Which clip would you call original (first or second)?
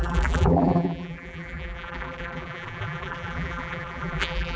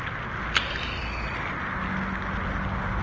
second